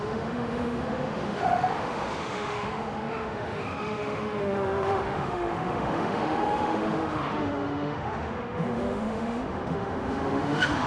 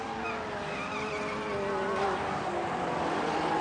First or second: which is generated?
first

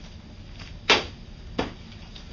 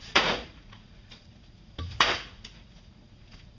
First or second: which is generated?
second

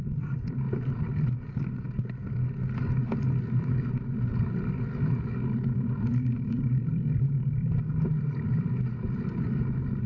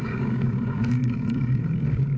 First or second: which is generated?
second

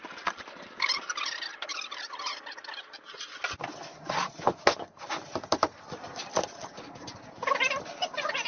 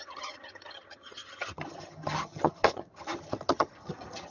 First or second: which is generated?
second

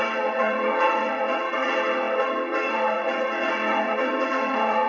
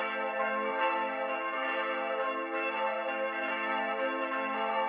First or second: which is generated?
first